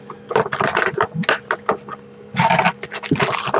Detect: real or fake real